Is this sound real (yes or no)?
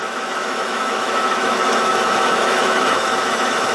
no